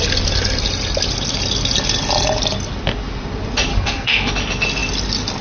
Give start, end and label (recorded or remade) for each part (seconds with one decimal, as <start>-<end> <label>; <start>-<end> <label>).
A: 0.0-3.7 recorded; 3.7-4.3 remade; 4.3-5.4 recorded